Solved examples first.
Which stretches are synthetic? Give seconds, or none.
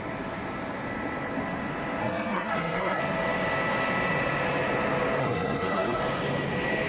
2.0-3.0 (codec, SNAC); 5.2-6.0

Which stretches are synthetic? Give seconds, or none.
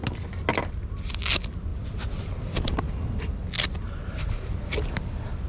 none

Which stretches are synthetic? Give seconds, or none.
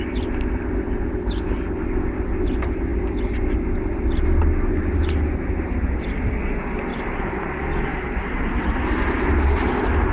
6.9-7.5 (vocoder, BigVGAN v2); 7.9-8.8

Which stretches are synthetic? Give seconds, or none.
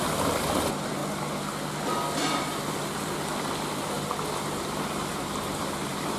0.0-1.0 (vocoder, BigVGAN v2); 4.7-6.2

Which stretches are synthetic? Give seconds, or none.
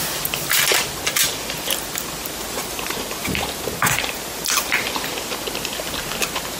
2.6-3.2 (vocoder, BigVGAN v2)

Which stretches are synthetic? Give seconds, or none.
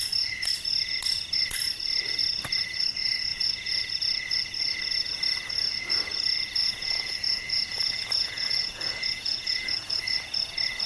3.3-3.9 (vocoder, Vocos); 6.6-10.0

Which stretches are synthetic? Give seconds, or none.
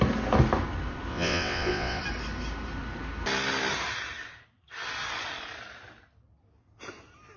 1.1-2.0 (vocoder, WaveNeXt)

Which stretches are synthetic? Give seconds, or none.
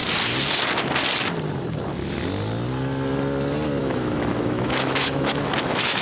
3.8-6.0 (autoencoder, DAC-VAE)